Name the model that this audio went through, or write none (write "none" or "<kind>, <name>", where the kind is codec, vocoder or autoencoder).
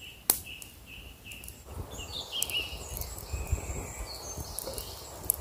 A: none